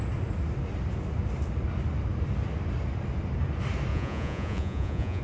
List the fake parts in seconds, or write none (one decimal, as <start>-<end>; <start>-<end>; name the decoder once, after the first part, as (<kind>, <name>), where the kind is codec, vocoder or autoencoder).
3.9-5.2 (vocoder, Vocos)